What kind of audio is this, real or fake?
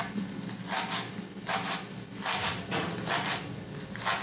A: real